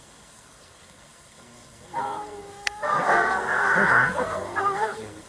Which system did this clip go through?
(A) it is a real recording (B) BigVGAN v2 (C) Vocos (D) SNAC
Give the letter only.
D